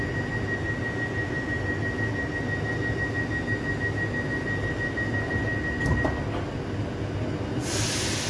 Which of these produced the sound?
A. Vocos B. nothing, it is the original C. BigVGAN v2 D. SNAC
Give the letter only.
B